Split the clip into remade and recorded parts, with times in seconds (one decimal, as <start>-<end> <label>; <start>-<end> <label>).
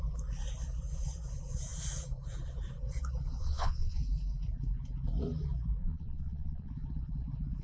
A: 0.0-3.4 recorded; 3.4-4.0 remade; 4.0-5.8 recorded; 5.8-6.7 remade; 6.7-7.6 recorded